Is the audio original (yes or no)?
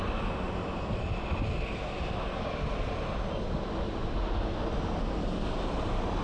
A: yes